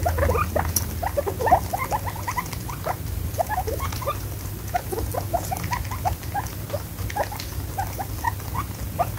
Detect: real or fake real